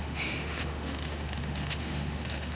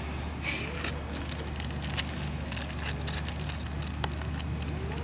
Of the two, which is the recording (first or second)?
second